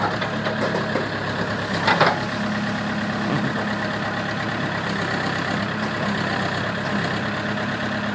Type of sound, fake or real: real